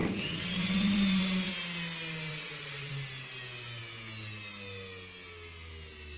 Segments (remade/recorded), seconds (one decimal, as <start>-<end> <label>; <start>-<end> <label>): 0.0-1.5 remade; 1.5-2.3 recorded; 2.3-2.9 remade; 2.9-6.2 recorded